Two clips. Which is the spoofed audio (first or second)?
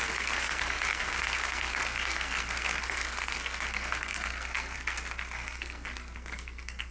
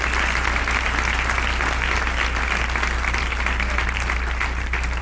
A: first